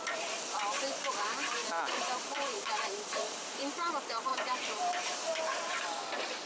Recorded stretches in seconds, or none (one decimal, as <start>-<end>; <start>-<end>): 0.0-1.6; 3.9-4.3; 5.8-6.5